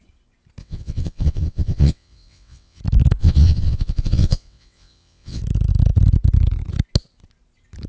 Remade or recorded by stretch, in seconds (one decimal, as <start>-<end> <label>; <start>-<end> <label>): 0.0-0.6 recorded; 0.6-2.8 remade; 2.8-3.2 recorded; 3.2-5.4 remade; 5.4-7.9 recorded